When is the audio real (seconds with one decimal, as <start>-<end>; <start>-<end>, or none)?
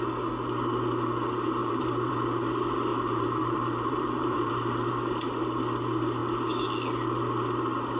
0.0-1.6; 2.1-2.9; 4.9-8.0